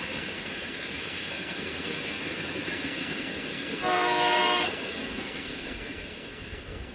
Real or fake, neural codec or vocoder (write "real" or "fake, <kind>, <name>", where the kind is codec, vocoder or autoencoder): fake, codec, SNAC